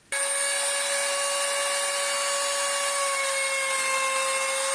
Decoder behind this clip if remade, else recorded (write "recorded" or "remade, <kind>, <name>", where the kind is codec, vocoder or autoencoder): recorded